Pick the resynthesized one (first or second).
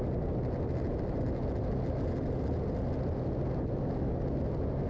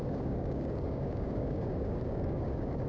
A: second